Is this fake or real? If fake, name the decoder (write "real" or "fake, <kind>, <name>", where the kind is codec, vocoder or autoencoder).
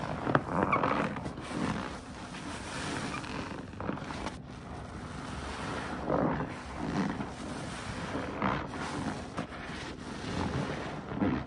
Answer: real